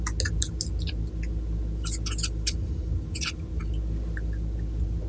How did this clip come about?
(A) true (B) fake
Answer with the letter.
A